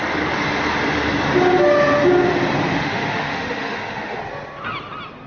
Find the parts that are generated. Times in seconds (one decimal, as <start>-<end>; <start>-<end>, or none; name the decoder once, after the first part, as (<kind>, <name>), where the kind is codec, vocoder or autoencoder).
2.8-4.2 (autoencoder, DAC-VAE)